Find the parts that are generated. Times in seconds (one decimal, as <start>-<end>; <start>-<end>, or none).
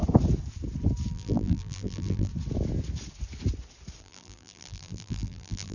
1.1-2.3; 4.0-5.7